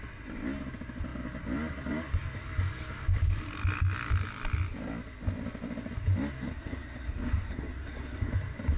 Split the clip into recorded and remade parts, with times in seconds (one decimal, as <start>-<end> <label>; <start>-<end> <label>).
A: 0.0-6.5 recorded; 6.5-8.3 remade; 8.3-8.8 recorded